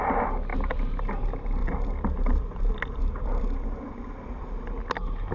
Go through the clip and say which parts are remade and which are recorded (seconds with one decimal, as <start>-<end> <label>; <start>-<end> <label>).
0.0-1.6 recorded; 1.6-4.8 remade; 4.8-5.3 recorded